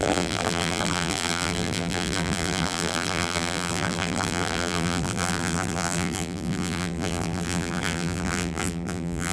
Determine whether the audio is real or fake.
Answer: fake